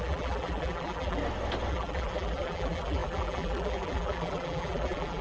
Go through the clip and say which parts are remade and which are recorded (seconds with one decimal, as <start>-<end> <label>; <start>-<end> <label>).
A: 0.0-1.2 remade; 1.2-1.7 recorded; 1.7-5.2 remade